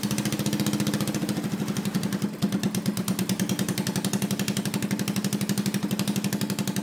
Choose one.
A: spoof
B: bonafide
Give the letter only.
B